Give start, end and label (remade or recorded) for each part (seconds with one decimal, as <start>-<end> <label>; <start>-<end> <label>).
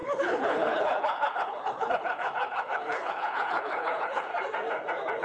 0.0-4.3 remade; 4.3-5.2 recorded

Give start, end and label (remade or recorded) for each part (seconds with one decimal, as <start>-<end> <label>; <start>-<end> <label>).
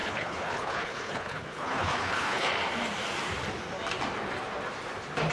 0.0-2.5 remade; 2.5-5.3 recorded